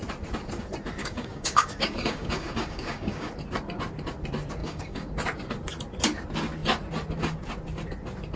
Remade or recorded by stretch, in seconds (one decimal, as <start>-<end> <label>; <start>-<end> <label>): 0.0-1.0 recorded; 1.0-3.3 remade; 3.3-4.6 recorded; 4.6-5.1 remade; 5.1-8.4 recorded